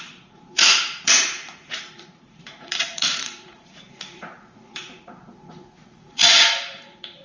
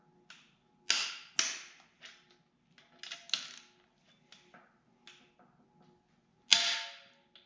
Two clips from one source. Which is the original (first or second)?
second